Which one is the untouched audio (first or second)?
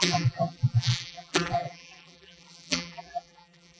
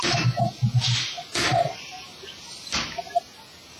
second